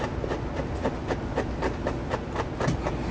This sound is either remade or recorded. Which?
recorded